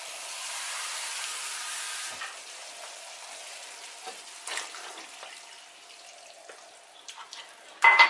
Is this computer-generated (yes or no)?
no